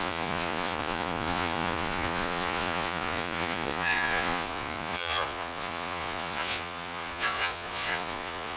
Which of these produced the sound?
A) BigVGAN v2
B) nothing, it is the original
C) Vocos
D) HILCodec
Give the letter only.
C